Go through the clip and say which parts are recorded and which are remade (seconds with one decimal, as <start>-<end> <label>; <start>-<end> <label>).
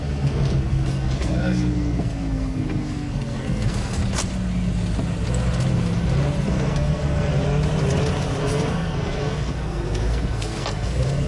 0.0-4.0 remade; 4.0-6.5 recorded; 6.5-7.3 remade; 7.3-8.4 recorded; 8.4-11.3 remade